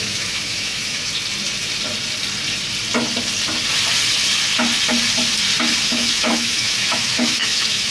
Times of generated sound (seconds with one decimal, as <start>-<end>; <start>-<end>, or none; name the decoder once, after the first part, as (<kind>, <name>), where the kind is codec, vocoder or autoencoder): 0.0-1.1 (autoencoder, DAC-VAE); 5.8-7.9